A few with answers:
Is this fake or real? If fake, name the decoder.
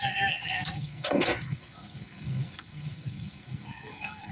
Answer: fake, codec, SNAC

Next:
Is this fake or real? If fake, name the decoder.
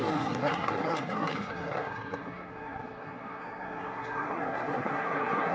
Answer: fake, codec, SNAC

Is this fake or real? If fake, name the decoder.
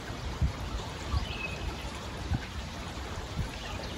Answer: fake, vocoder, BigVGAN v2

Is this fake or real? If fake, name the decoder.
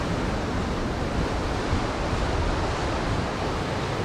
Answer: real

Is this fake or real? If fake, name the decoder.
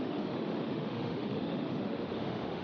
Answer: fake, autoencoder, DAC-VAE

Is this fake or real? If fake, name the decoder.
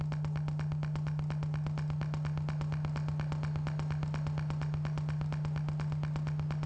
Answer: real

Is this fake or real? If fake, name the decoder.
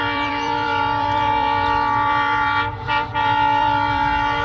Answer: fake, vocoder, BigVGAN v2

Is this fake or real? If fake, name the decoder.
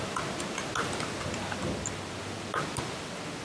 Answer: real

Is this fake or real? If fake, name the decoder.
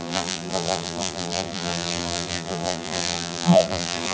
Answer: fake, vocoder, BigVGAN v2